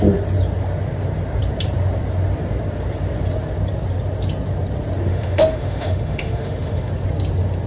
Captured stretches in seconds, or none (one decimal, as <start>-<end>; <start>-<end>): 0.0-5.1; 6.9-7.7